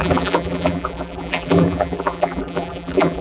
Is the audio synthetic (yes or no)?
yes